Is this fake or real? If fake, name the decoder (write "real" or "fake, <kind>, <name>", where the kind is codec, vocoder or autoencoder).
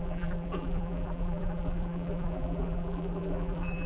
fake, vocoder, BigVGAN v2